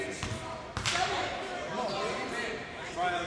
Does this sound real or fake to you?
real